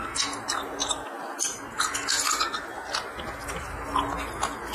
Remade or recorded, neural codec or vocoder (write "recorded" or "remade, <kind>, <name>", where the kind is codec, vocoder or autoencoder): recorded